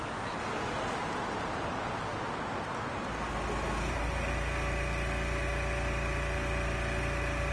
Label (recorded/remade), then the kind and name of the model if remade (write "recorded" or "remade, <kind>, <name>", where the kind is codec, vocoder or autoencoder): recorded